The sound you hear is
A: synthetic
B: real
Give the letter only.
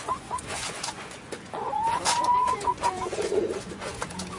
A